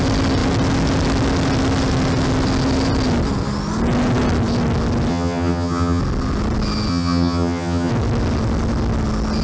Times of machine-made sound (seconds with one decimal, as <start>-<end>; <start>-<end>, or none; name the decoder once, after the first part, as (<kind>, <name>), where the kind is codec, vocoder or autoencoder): 5.1-6.0 (vocoder, HiFi-GAN); 6.9-7.9